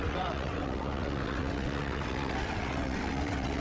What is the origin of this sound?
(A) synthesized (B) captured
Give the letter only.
A